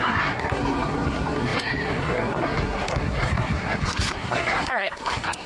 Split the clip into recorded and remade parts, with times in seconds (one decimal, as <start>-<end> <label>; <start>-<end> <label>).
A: 0.0-5.5 remade